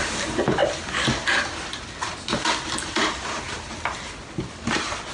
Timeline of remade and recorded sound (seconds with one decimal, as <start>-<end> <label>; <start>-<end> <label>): 0.0-5.1 recorded

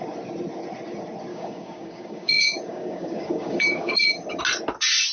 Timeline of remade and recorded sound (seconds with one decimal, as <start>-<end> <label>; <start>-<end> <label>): 0.0-1.3 recorded; 1.3-4.4 remade; 4.4-5.1 recorded

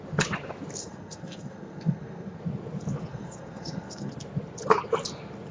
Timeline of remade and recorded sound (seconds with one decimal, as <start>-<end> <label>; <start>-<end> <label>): 0.0-0.8 recorded; 0.8-2.4 remade; 2.4-3.1 recorded; 3.1-4.1 remade; 4.1-5.5 recorded

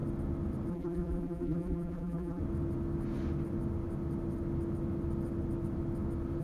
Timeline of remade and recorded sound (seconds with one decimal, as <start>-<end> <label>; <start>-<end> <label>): 0.0-0.7 recorded; 0.7-2.4 remade; 2.4-6.4 recorded

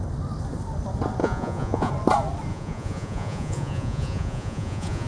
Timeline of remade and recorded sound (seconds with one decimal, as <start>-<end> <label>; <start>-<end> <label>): 0.0-1.2 recorded; 1.2-1.9 remade; 1.9-2.5 recorded; 2.5-5.1 remade

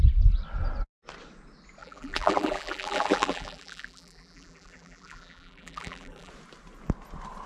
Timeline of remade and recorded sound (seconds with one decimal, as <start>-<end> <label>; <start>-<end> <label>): 0.0-1.8 recorded; 1.8-6.3 remade; 6.3-7.5 recorded